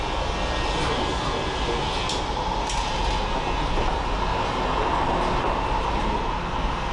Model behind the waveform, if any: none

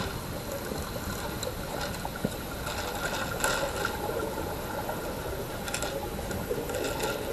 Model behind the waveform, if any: none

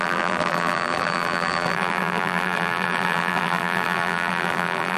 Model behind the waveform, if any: vocoder, BigVGAN v2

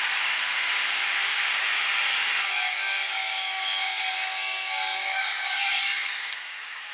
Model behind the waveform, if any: codec, DAC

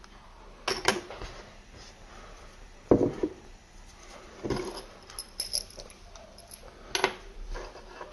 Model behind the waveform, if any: none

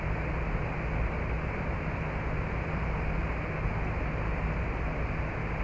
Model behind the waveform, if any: none